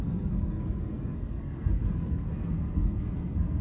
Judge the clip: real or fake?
fake